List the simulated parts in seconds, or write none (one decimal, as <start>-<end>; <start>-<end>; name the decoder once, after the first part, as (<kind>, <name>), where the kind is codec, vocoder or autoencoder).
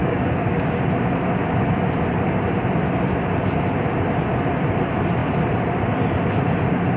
0.0-0.8 (codec, DAC)